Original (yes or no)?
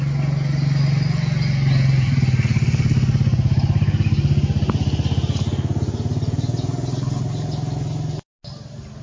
yes